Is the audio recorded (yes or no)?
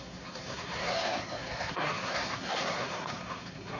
no